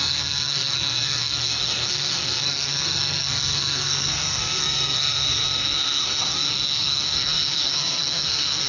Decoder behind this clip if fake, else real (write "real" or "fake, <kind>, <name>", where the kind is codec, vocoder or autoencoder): fake, codec, SNAC